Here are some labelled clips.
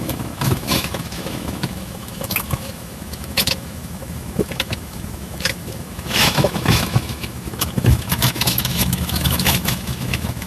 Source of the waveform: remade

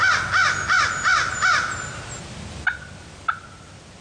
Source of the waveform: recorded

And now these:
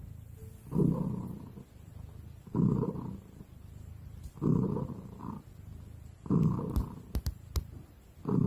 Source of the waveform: recorded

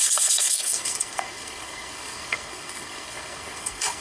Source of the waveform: remade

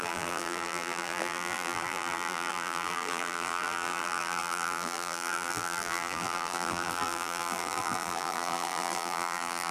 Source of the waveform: remade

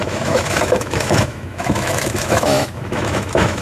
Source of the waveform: remade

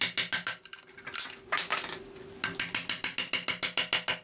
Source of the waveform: recorded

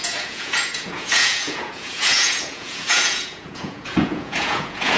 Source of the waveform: remade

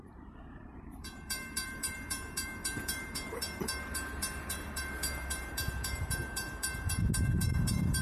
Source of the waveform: remade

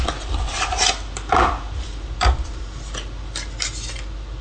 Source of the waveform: recorded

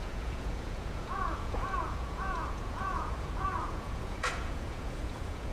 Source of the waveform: remade